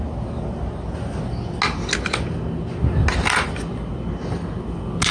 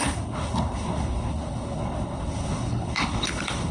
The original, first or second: first